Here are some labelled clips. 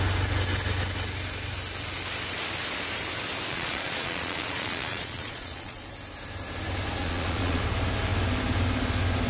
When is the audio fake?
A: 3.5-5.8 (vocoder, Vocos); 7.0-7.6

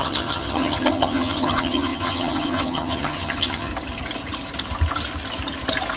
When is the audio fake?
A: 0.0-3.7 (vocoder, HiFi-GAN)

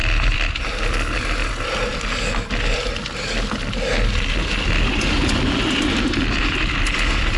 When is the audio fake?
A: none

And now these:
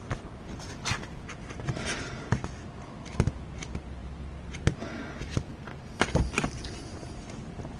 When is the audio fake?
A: none

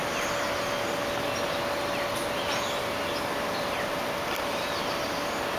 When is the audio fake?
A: none